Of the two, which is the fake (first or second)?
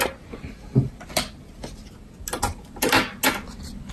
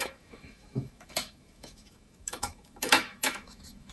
second